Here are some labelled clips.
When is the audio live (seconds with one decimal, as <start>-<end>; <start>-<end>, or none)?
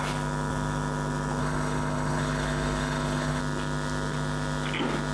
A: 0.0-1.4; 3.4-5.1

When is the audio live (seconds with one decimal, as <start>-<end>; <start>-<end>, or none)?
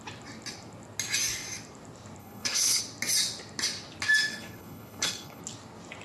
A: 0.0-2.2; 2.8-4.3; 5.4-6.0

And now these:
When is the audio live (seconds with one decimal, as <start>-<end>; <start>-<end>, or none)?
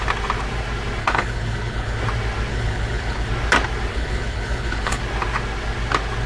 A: 0.0-1.0; 2.0-2.5; 3.3-3.9; 5.0-6.3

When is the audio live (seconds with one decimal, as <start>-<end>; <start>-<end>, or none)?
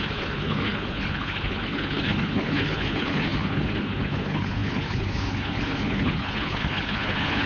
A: none